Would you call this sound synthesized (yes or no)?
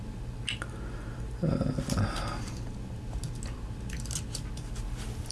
no